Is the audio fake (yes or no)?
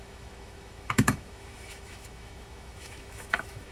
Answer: yes